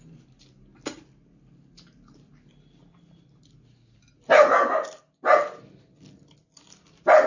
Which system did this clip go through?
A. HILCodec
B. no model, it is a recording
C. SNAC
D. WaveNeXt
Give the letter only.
B